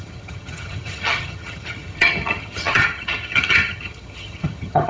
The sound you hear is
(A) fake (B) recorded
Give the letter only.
A